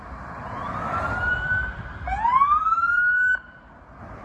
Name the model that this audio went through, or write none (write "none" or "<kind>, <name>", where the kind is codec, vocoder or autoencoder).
none